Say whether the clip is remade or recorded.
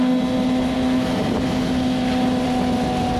recorded